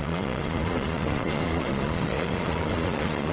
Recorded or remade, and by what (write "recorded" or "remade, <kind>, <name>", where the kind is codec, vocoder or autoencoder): remade, vocoder, Vocos